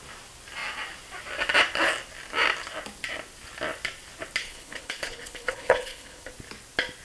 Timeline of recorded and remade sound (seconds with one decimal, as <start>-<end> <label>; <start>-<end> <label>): 0.0-4.4 recorded; 4.4-6.3 remade; 6.3-7.0 recorded